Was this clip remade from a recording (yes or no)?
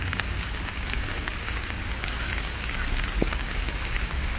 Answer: yes